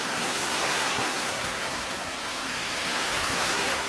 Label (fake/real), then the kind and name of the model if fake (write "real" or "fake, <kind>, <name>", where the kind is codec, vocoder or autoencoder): fake, codec, SNAC